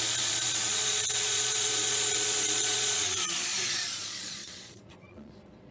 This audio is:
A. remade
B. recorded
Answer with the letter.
A